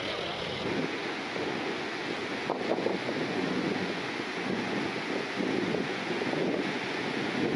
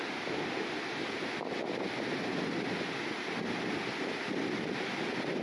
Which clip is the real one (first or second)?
second